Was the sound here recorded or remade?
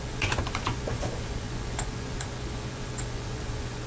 remade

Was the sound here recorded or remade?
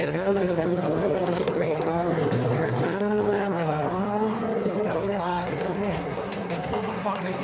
remade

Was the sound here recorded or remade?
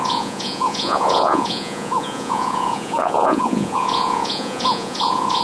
remade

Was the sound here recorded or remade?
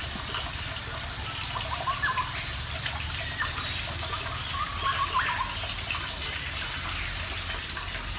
recorded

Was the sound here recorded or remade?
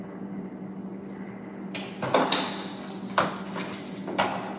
recorded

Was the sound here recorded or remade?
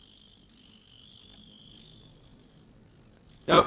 recorded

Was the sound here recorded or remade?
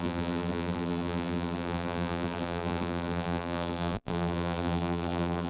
remade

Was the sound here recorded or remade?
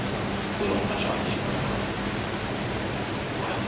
recorded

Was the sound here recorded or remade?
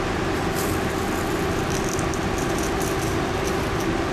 recorded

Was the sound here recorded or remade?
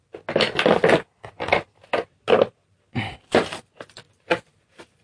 recorded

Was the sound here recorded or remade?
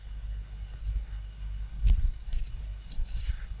remade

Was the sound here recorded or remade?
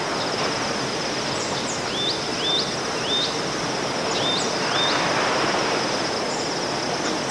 recorded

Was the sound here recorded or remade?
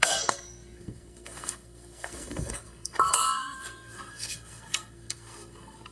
remade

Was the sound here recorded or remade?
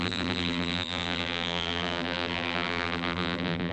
remade